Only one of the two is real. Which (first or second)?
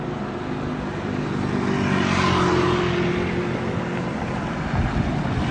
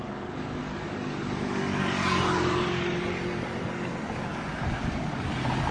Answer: first